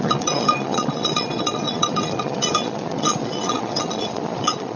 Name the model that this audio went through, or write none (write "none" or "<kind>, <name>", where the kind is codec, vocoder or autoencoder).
vocoder, Vocos